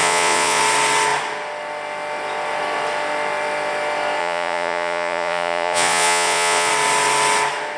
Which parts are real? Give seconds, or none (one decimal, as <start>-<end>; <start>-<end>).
0.6-4.2; 6.7-7.8